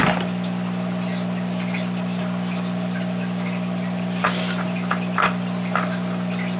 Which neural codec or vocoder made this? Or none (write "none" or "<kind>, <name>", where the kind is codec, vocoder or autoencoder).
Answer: none